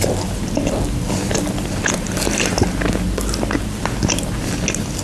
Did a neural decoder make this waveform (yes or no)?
no